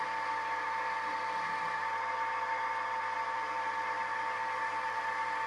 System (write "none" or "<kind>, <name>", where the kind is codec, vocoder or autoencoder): none